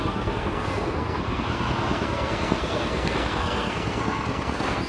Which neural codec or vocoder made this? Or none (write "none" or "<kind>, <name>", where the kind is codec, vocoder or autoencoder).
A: codec, SNAC